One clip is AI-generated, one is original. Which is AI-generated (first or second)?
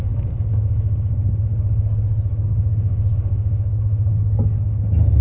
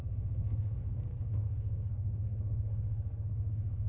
second